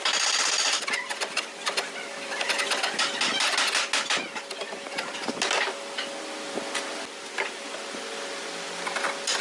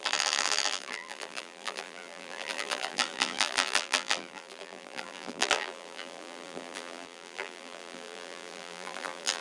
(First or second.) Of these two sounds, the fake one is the second